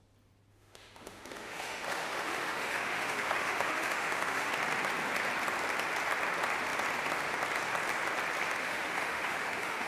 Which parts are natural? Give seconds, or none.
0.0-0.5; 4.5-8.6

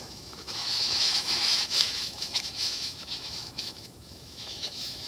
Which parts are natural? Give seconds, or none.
none

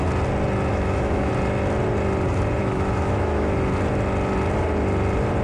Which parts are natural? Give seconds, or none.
0.0-0.7; 1.3-2.6; 3.7-5.4